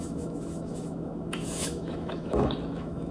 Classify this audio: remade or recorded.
remade